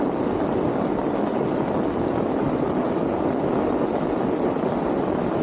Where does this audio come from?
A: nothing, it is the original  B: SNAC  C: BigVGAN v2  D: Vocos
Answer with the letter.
A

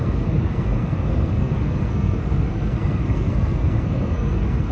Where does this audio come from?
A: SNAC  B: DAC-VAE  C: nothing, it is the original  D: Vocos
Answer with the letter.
A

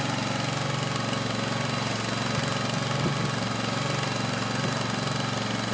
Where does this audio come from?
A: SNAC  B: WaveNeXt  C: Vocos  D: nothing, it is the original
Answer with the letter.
D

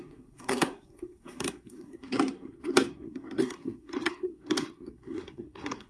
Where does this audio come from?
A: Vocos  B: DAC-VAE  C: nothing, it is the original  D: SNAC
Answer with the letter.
D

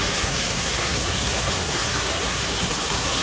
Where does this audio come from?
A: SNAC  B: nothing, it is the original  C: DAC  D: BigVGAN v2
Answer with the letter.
A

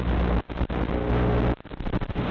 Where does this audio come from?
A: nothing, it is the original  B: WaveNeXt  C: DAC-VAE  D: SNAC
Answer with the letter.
A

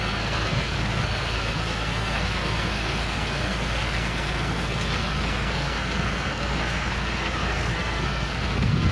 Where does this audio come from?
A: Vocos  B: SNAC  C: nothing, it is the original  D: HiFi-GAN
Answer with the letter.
B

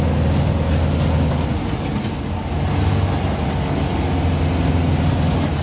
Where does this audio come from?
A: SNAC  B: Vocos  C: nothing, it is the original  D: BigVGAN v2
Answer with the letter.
C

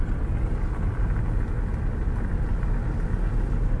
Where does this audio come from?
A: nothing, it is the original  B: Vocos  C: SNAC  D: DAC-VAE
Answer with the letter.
A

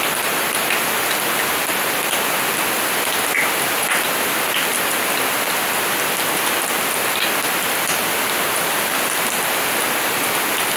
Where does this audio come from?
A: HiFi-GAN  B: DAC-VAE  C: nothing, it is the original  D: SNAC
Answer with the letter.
C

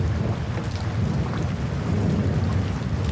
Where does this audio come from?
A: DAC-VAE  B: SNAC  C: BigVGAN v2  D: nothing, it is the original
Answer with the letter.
D